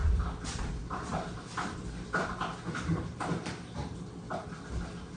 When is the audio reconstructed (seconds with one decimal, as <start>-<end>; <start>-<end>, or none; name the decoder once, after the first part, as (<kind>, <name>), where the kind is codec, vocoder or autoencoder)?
none